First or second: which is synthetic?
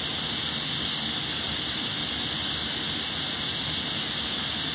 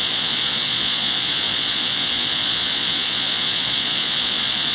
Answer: second